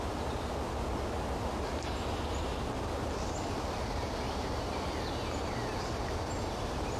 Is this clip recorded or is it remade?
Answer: recorded